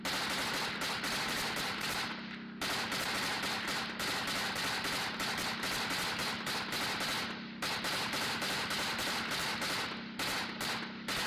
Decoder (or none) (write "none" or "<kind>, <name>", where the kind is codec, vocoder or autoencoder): none